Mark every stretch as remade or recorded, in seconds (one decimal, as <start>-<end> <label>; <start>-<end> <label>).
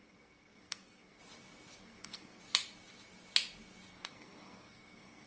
0.0-1.2 remade; 1.2-1.8 recorded; 1.8-2.4 remade; 2.4-3.9 recorded; 3.9-5.3 remade